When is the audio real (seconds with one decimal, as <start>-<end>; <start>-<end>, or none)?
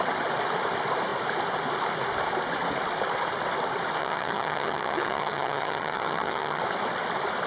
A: 0.0-4.0; 6.6-7.5